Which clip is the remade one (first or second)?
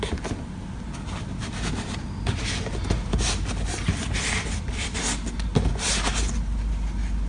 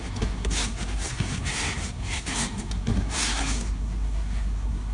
second